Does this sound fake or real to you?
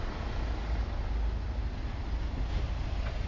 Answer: real